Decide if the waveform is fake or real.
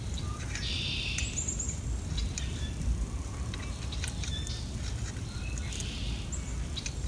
real